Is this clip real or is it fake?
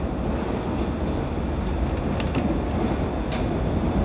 real